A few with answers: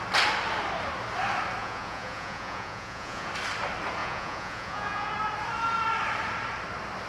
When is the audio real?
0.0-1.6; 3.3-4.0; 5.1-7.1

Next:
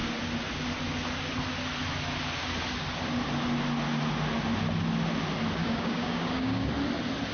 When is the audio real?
0.0-5.6; 6.7-7.3

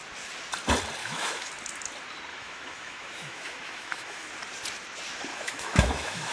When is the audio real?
0.0-1.0; 1.5-2.3; 4.3-5.3